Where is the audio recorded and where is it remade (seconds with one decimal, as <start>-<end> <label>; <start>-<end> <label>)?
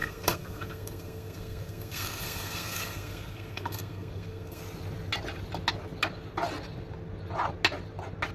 0.0-4.6 remade; 4.6-8.3 recorded